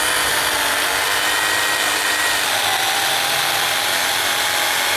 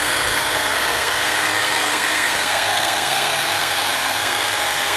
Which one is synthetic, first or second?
second